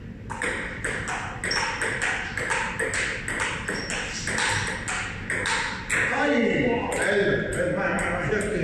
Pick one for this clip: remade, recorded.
recorded